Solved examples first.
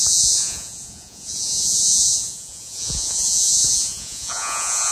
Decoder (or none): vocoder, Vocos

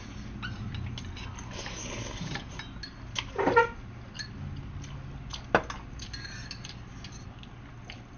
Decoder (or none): none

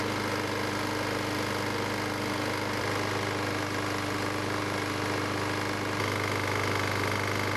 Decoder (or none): none